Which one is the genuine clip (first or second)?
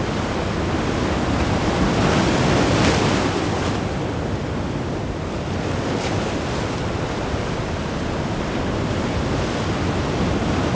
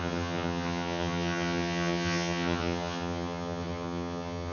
first